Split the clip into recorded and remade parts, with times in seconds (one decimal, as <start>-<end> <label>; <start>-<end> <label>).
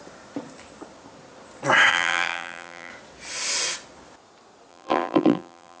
0.0-1.9 recorded; 1.9-2.9 remade; 2.9-4.7 recorded; 4.7-5.8 remade